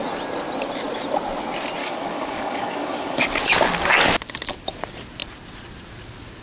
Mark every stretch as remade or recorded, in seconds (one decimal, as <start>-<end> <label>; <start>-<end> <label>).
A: 0.0-1.8 recorded; 1.8-3.2 remade; 3.2-6.4 recorded